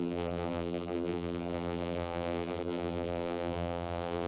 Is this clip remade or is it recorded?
remade